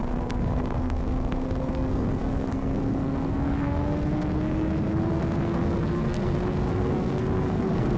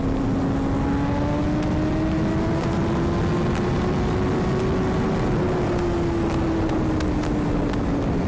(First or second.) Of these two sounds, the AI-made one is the first